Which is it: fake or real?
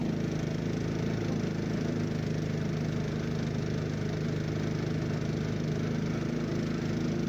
real